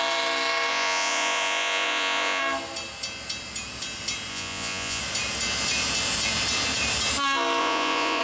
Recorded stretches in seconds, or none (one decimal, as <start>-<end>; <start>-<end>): 0.0-0.7; 2.4-4.3; 5.0-7.6